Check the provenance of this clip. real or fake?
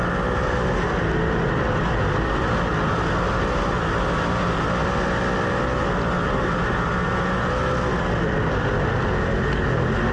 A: real